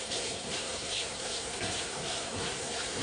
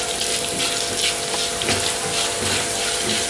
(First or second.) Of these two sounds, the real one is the second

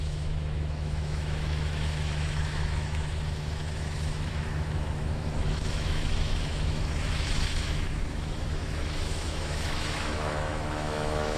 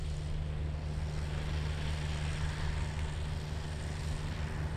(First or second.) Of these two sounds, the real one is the second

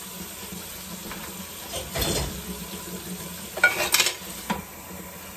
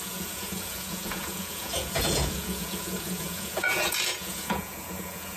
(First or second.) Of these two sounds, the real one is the first